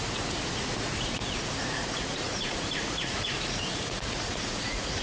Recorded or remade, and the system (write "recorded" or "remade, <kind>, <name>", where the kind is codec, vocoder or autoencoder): remade, vocoder, Vocos